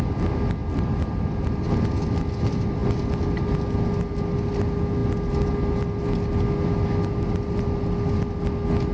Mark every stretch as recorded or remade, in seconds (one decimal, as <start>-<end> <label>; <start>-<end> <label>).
0.0-8.9 recorded